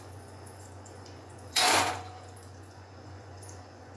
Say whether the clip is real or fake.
fake